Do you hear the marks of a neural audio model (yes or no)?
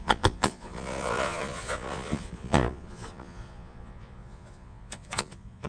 yes